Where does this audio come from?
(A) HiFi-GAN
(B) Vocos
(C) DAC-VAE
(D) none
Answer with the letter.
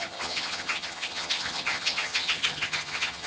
A